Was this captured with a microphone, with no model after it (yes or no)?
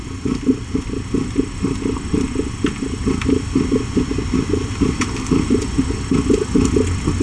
yes